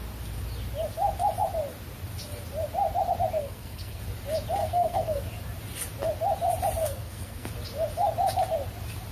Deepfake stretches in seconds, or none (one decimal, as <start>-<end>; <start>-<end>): 3.4-4.0; 4.6-5.2; 6.8-7.5